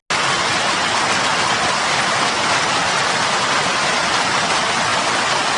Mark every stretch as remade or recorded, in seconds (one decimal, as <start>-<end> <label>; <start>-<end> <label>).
0.0-5.6 recorded